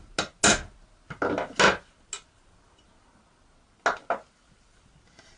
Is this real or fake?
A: real